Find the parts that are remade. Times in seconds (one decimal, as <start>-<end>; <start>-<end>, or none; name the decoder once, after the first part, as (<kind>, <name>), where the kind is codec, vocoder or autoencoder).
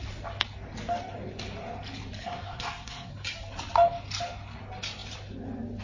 2.2-3.1 (codec, SNAC)